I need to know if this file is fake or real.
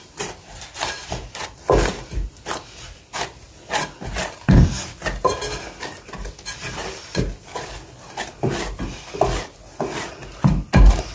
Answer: real